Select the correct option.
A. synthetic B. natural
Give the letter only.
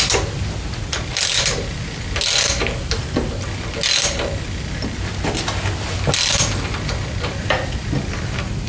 B